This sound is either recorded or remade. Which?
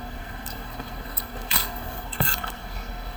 remade